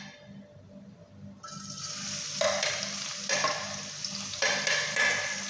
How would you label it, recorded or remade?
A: recorded